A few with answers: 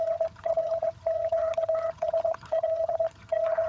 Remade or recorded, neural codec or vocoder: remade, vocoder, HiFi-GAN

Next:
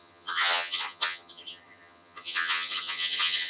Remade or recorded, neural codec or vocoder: remade, vocoder, HiFi-GAN